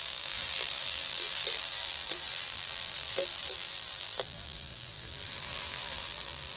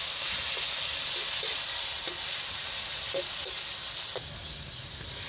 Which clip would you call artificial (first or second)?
first